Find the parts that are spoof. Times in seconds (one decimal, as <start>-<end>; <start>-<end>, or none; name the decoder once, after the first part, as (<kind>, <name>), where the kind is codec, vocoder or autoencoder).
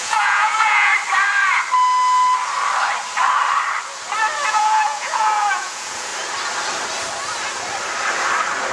0.0-0.9 (vocoder, Vocos); 4.5-6.1